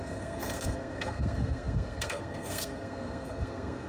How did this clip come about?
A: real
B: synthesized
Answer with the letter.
B